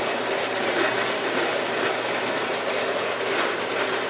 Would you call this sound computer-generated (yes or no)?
no